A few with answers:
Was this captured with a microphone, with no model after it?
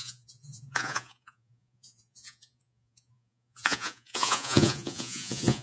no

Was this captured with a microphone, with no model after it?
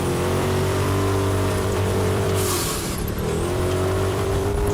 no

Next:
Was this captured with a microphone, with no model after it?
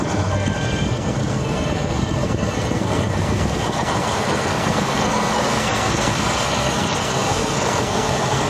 no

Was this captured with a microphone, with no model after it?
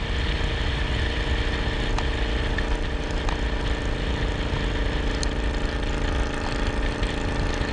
yes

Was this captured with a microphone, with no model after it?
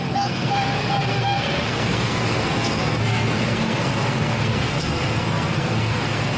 no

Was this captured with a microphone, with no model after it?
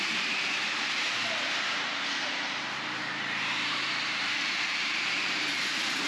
no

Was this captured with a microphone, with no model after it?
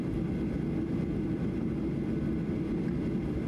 yes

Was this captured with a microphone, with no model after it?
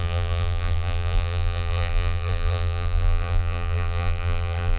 no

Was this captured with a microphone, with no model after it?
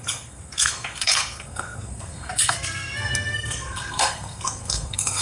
no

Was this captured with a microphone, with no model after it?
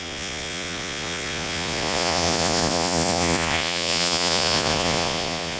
no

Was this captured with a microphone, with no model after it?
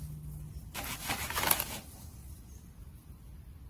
yes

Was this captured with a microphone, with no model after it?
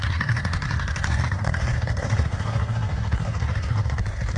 no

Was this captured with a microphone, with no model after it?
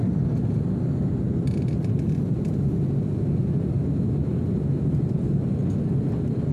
yes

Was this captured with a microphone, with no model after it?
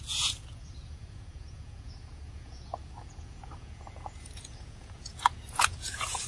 no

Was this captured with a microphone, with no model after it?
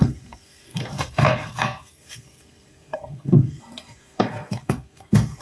no